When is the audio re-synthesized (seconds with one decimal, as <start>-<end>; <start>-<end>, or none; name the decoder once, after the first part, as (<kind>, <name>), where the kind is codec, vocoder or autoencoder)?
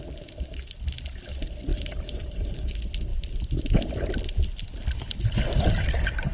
1.7-2.5 (vocoder, BigVGAN v2)